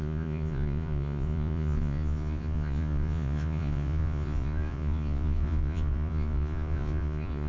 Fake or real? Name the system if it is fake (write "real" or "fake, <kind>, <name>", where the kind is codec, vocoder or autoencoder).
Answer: fake, vocoder, Vocos